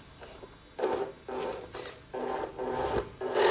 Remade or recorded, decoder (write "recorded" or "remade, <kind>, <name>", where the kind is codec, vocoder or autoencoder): recorded